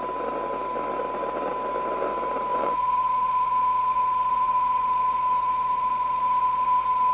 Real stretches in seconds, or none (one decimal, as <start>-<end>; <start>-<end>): 0.0-2.5